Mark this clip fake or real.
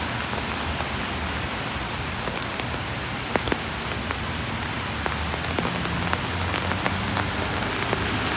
real